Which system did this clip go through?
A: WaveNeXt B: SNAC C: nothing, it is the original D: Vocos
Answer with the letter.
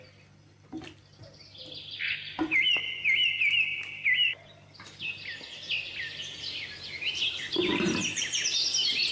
C